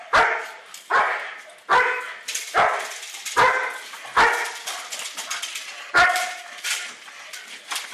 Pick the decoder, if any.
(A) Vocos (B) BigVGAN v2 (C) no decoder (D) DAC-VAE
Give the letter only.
C